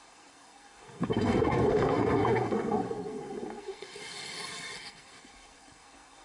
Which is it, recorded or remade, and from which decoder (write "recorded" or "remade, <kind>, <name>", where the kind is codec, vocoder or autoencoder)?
remade, codec, SNAC